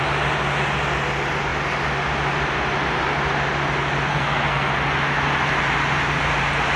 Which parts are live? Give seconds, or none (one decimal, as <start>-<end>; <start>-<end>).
0.0-4.1; 4.7-6.8